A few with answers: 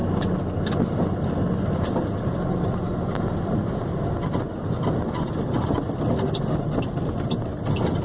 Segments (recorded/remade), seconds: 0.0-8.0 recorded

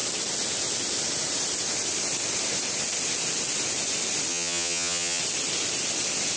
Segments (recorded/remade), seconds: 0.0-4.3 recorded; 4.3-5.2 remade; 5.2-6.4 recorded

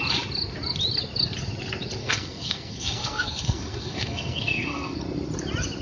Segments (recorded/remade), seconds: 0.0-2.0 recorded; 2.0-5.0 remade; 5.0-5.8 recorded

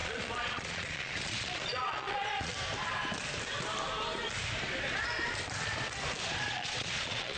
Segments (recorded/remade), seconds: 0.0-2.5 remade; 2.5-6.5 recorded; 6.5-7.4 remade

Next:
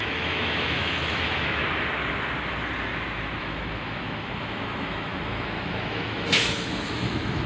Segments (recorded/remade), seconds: 0.0-1.6 remade; 1.6-3.4 recorded; 3.4-7.5 remade

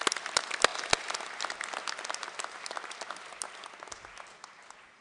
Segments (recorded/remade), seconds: 0.0-5.0 recorded